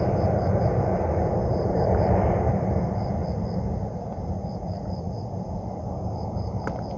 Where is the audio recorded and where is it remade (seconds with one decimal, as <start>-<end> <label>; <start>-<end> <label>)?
0.0-3.2 remade; 3.2-4.2 recorded; 4.2-7.0 remade